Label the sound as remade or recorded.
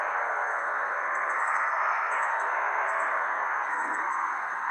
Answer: remade